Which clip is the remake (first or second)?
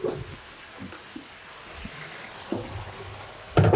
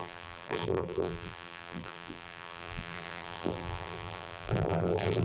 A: second